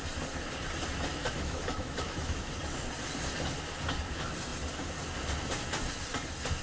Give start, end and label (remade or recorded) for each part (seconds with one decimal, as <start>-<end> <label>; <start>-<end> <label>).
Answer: 0.0-1.1 recorded; 1.1-2.5 remade; 2.5-6.6 recorded

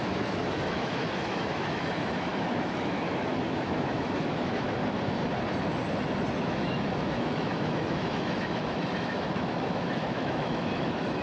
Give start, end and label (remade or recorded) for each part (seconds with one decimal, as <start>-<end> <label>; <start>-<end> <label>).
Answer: 0.0-4.8 remade; 4.8-6.4 recorded; 6.4-11.2 remade

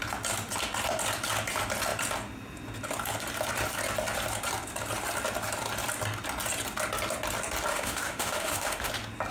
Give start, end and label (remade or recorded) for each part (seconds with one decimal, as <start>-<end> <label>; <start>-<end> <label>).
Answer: 0.0-7.7 recorded; 7.7-8.9 remade; 8.9-9.3 recorded

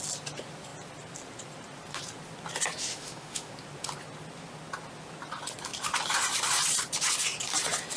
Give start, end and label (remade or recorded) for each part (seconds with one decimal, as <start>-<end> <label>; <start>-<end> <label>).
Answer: 0.0-2.9 recorded; 2.9-3.5 remade; 3.5-8.0 recorded